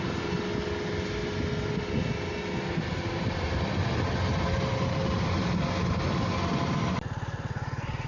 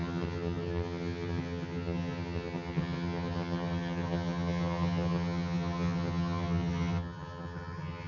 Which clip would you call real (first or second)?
first